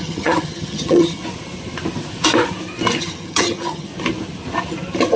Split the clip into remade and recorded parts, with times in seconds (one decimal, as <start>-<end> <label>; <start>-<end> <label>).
0.0-1.2 remade; 1.2-3.0 recorded; 3.0-3.9 remade; 3.9-5.2 recorded